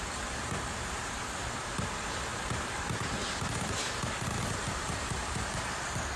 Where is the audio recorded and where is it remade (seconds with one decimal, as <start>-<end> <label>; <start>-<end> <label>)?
0.0-6.2 remade